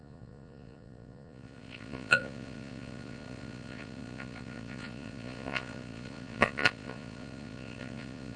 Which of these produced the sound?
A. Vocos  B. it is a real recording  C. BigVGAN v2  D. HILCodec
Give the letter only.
A